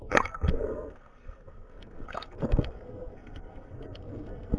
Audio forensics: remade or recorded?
remade